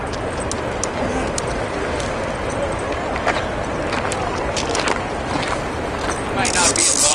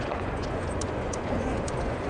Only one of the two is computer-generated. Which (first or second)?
second